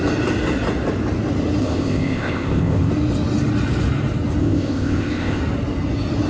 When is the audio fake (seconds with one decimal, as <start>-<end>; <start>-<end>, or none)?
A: 1.6-2.9; 4.4-5.4